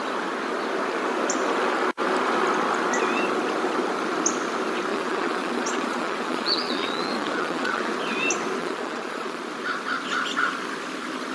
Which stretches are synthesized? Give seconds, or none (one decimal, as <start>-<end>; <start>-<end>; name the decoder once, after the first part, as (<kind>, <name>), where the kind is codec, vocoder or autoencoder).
4.9-7.9 (vocoder, Vocos); 8.6-9.4